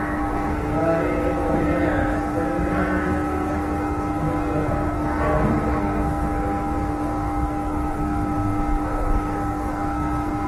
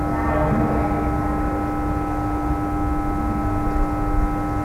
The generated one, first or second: first